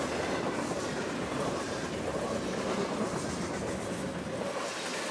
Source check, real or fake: real